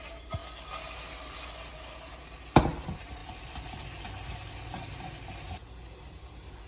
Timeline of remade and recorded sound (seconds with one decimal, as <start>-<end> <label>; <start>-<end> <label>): 0.0-3.2 recorded; 3.2-3.8 remade; 3.8-6.7 recorded